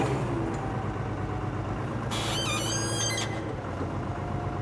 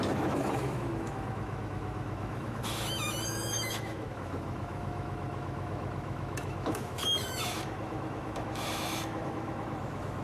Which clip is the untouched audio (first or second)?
first